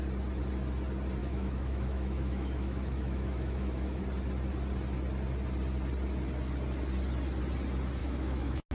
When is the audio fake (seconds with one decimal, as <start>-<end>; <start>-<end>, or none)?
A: 1.2-4.0; 8.0-8.7